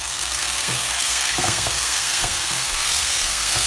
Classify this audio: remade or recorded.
remade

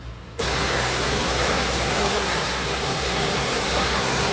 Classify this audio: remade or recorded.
remade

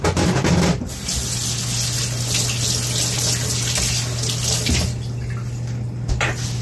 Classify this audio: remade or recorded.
recorded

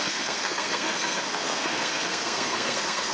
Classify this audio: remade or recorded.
remade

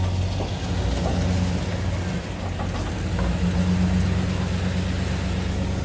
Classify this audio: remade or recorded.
recorded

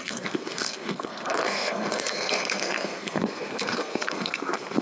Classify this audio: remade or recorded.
remade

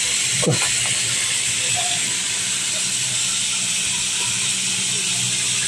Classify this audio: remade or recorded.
recorded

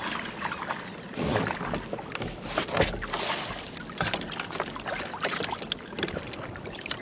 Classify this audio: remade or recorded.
recorded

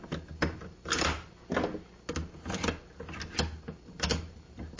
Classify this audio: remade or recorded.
recorded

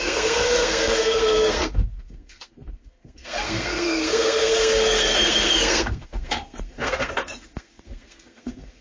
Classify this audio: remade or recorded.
remade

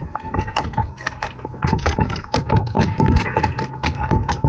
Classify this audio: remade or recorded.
remade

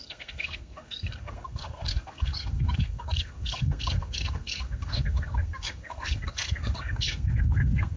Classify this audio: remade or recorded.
remade